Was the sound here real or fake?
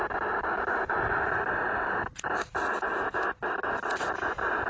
real